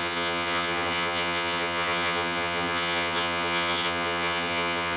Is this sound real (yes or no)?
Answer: no